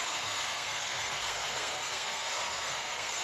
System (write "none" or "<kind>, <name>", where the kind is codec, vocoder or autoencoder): codec, SNAC